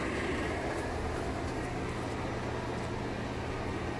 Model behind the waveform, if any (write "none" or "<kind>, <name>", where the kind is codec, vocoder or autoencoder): none